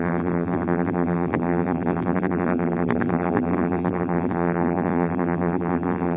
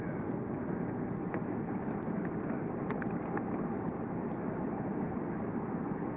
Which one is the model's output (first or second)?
first